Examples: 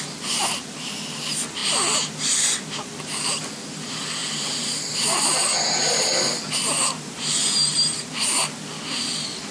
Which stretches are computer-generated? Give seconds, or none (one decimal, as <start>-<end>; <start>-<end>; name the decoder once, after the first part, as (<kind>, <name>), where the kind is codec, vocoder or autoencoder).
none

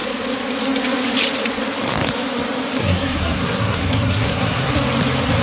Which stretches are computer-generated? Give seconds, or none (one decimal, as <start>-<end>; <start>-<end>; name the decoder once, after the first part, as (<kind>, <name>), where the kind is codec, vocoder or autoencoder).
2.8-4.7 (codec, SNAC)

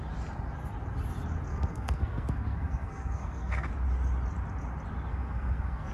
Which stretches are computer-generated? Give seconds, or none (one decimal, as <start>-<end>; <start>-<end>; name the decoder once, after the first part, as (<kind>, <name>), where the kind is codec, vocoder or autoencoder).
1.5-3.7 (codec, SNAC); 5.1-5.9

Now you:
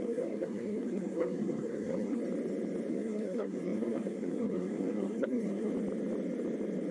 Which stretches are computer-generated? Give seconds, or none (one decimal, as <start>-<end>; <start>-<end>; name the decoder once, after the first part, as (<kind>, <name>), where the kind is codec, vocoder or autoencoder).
0.0-2.2 (codec, SNAC); 2.9-5.7

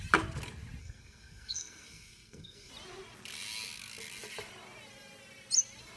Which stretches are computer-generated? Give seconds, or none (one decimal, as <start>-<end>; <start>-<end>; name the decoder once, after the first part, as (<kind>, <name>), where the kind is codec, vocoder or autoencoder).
0.8-2.7 (codec, SNAC)

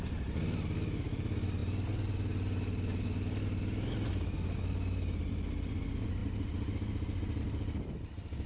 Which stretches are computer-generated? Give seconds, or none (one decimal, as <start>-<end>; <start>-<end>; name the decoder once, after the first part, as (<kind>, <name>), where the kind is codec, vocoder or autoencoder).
none

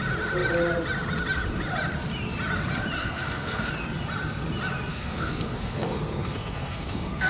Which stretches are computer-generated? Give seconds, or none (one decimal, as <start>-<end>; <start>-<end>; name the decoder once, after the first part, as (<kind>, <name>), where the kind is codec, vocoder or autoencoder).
3.0-3.7 (codec, SNAC); 4.9-7.3